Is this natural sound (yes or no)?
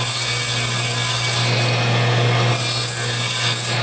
yes